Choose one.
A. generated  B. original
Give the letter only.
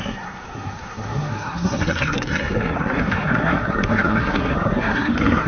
A